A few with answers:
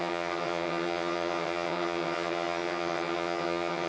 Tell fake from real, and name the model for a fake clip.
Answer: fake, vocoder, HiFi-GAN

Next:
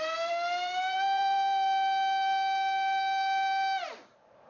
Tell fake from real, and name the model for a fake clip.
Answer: fake, vocoder, BigVGAN v2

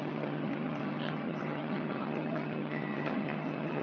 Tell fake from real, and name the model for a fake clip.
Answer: fake, vocoder, HiFi-GAN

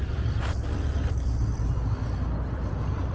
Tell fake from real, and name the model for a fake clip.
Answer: fake, vocoder, BigVGAN v2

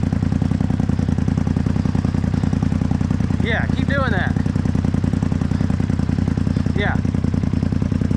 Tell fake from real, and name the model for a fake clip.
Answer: real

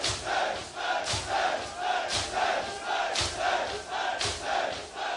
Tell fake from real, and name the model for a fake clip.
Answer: real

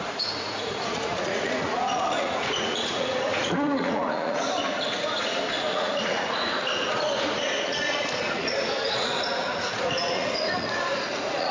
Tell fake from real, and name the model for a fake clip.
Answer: fake, vocoder, Vocos